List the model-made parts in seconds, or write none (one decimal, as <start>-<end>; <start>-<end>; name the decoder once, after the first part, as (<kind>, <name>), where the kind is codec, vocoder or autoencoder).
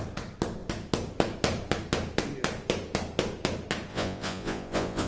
3.9-5.1 (vocoder, Vocos)